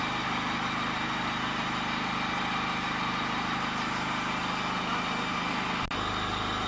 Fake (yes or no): no